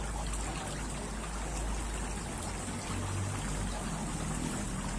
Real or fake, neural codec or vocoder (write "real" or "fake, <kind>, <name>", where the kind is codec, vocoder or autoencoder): real